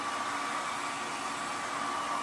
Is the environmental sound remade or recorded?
recorded